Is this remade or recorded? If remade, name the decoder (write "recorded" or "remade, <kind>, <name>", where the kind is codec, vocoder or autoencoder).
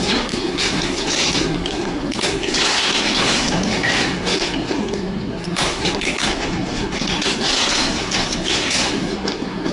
remade, codec, SNAC